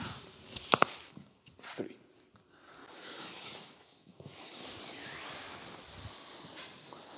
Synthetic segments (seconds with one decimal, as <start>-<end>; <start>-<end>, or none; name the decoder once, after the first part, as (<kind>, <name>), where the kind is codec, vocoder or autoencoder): 0.8-1.5 (autoencoder, DAC-VAE); 2.8-4.8